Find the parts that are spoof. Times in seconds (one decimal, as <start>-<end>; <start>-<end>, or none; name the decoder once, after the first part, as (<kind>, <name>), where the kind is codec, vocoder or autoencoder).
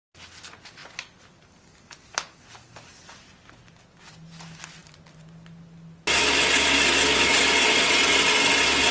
none